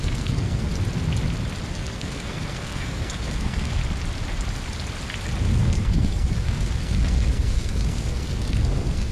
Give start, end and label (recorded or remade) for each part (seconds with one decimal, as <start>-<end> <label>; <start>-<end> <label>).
0.0-0.7 remade; 0.7-1.7 recorded; 1.7-3.8 remade; 3.8-5.4 recorded; 5.4-9.1 remade